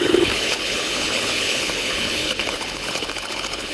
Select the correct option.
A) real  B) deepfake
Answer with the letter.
B